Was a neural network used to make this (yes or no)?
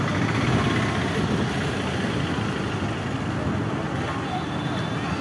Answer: no